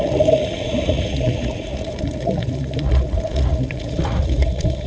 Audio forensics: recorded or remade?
remade